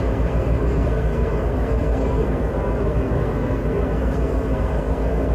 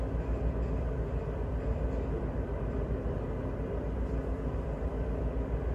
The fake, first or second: first